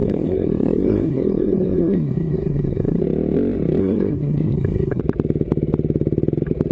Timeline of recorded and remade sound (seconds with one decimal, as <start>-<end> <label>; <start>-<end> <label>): 0.0-3.0 remade; 3.0-3.8 recorded; 3.8-5.0 remade; 5.0-6.7 recorded